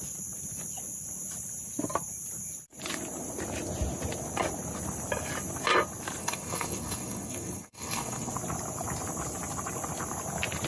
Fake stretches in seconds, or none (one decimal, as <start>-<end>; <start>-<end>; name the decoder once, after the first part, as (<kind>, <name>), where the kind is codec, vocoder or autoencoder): 6.2-8.3 (codec, SNAC)